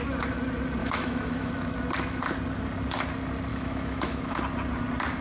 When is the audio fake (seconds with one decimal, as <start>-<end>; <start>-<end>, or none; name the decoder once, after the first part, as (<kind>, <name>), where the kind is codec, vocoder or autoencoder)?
0.8-1.5 (autoencoder, DAC-VAE); 3.5-4.4